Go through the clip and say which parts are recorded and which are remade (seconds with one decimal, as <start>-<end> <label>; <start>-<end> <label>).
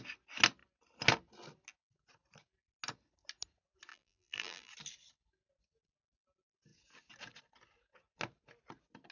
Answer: 0.0-3.9 recorded; 3.9-4.7 remade; 4.7-9.1 recorded